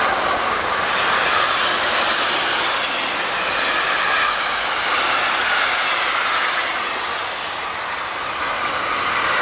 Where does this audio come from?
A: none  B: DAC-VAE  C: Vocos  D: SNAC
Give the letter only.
A